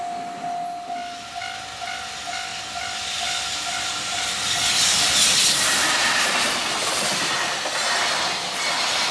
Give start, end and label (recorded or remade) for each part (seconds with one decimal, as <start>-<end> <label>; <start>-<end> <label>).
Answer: 0.0-6.8 recorded; 6.8-7.3 remade; 7.3-9.1 recorded